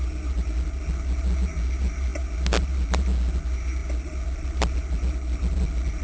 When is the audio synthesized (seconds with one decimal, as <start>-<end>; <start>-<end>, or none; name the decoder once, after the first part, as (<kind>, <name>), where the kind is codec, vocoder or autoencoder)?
none